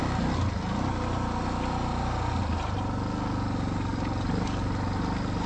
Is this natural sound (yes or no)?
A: yes